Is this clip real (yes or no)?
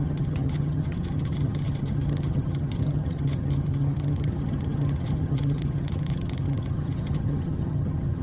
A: no